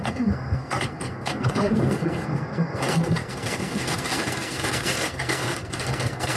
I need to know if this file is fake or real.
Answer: fake